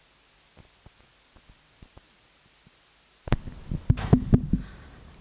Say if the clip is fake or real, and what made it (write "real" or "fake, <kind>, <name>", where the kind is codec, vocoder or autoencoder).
real